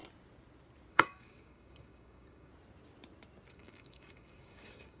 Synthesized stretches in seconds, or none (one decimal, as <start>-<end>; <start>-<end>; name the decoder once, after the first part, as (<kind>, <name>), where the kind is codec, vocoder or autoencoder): 0.9-2.5 (codec, DAC); 3.5-5.0